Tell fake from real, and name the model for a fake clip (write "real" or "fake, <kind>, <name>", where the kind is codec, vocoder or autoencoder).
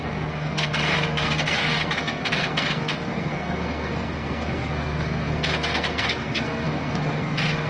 fake, codec, SNAC